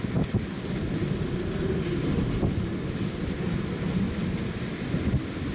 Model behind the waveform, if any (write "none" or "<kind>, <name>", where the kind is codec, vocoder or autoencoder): none